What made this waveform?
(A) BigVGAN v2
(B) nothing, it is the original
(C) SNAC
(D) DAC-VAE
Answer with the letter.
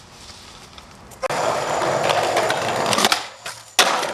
B